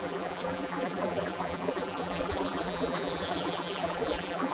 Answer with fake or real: fake